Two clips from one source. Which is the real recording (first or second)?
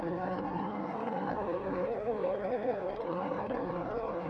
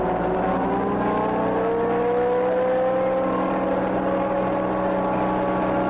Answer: second